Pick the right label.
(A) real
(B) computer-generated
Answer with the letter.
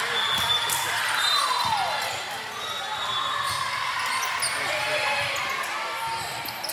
A